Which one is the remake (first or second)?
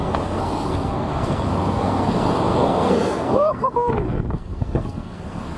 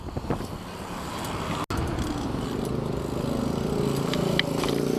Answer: first